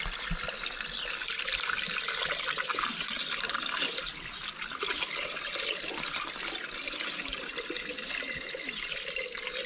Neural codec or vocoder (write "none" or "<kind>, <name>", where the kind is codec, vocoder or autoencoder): none